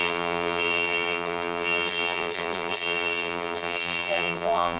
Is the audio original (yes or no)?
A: no